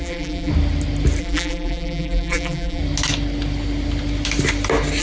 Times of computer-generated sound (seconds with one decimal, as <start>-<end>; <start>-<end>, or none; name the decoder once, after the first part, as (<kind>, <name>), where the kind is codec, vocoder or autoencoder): 0.0-0.5 (vocoder, BigVGAN v2); 1.2-2.8